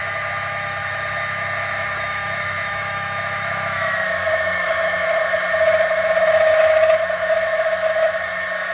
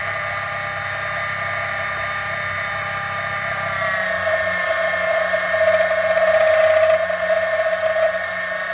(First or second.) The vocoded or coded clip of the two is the first